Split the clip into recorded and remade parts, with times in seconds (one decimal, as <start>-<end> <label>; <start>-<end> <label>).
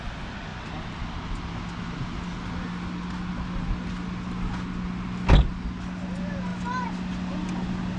0.0-8.0 recorded